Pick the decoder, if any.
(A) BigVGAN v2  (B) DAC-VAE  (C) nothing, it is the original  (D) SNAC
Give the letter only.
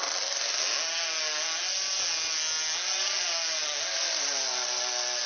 C